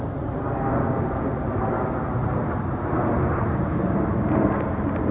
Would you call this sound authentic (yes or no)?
yes